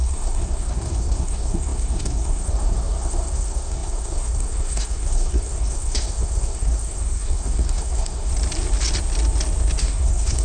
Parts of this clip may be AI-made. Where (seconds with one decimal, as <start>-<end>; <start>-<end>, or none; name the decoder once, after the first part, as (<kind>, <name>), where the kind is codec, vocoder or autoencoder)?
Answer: 0.0-8.3 (codec, SNAC); 9.8-10.4